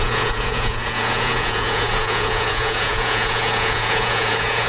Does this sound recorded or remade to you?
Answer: remade